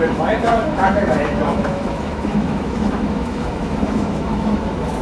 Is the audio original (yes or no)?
no